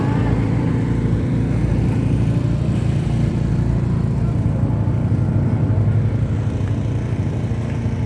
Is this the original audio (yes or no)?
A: no